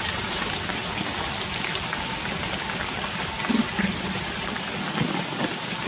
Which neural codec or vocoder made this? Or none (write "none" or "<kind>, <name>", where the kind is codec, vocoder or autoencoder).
none